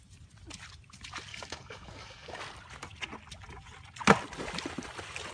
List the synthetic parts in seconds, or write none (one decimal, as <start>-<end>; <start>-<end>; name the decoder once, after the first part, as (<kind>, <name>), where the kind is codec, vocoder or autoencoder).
1.3-2.4 (codec, DAC)